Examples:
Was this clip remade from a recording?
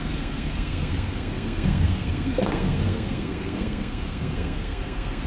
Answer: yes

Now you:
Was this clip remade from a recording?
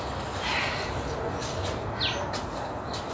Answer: no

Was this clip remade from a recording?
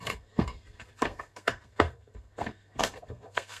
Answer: yes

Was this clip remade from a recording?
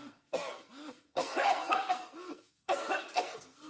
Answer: yes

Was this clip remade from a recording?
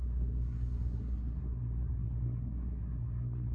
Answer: yes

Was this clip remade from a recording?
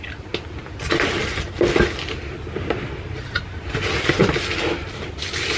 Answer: no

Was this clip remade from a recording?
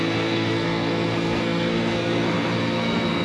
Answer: yes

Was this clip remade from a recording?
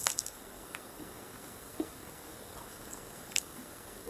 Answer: yes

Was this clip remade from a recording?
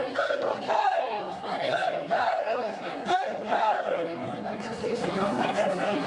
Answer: yes